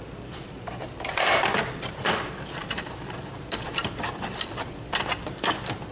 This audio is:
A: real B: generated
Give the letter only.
B